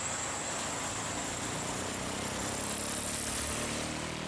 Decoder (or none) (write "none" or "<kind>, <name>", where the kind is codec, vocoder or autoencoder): none